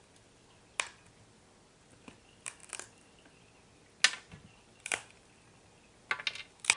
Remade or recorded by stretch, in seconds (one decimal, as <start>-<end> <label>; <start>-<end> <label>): 0.0-6.8 recorded